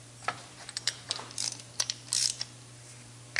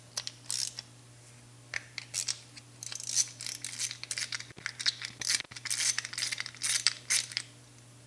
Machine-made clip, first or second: first